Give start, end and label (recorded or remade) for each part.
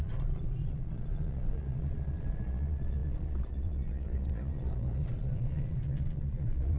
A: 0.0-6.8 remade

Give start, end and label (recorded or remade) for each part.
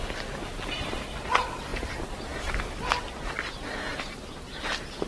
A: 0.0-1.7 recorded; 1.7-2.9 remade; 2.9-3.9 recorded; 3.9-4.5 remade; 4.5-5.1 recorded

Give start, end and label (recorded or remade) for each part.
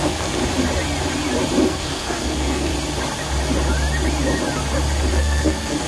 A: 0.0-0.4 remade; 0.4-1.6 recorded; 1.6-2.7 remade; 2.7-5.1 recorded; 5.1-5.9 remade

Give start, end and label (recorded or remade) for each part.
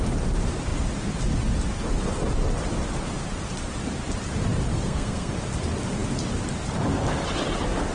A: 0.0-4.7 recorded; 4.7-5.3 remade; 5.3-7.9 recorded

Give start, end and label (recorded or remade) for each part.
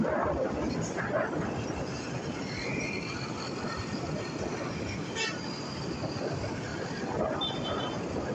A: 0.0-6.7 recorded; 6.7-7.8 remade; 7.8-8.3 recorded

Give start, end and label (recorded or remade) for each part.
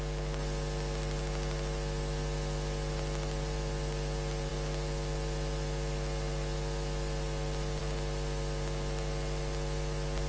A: 0.0-10.3 recorded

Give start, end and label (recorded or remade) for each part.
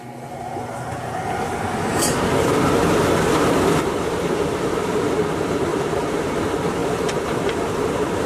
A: 0.0-1.9 recorded; 1.9-5.1 remade; 5.1-5.7 recorded; 5.7-6.3 remade; 6.3-6.8 recorded; 6.8-8.3 remade